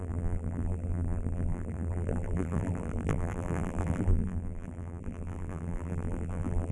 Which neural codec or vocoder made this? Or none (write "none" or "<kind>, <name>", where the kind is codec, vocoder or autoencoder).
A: vocoder, BigVGAN v2